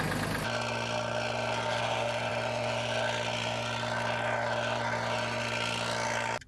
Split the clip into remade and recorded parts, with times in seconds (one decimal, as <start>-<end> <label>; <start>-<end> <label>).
0.0-6.5 recorded